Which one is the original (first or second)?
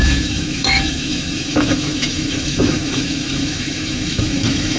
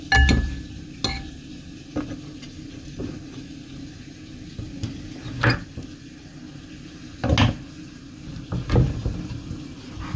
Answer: second